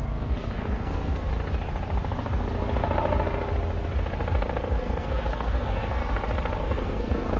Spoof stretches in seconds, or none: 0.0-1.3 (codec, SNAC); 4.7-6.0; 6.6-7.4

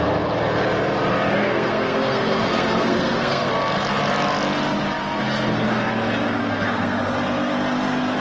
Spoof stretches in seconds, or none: 1.4-3.5 (codec, SNAC); 5.0-5.6; 6.4-7.0